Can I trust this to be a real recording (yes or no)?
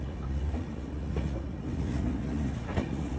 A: no